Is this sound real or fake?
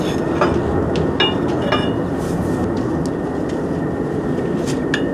real